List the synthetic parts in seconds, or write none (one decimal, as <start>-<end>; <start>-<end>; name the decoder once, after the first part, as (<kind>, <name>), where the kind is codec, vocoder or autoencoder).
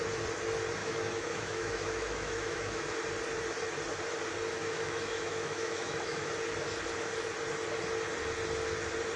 0.8-2.9 (autoencoder, DAC-VAE); 4.6-6.3